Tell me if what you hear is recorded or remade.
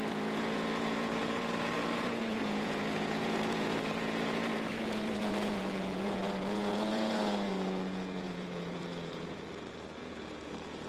remade